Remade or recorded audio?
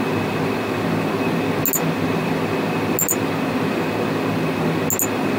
recorded